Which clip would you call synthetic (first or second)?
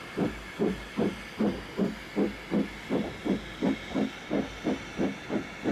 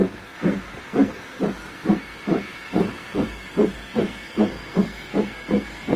second